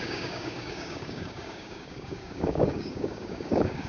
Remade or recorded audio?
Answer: remade